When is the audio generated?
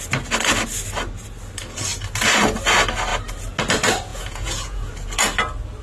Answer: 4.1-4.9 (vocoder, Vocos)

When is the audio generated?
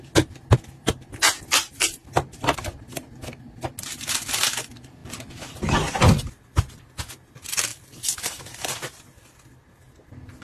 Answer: 5.0-6.8 (vocoder, BigVGAN v2); 7.7-9.0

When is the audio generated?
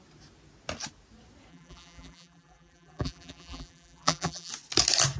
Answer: 1.5-4.5 (vocoder, BigVGAN v2)